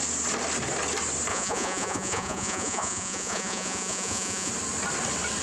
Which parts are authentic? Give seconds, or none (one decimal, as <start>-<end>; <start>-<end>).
0.0-1.3; 4.5-5.4